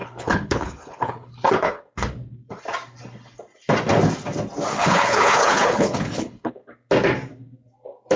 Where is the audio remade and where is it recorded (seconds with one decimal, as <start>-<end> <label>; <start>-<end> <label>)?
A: 0.0-1.8 remade; 1.8-4.7 recorded; 4.7-6.5 remade; 6.5-8.2 recorded